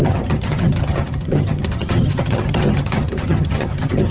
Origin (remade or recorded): remade